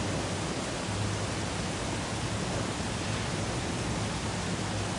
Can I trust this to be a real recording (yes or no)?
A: yes